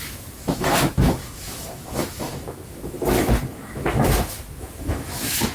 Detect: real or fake fake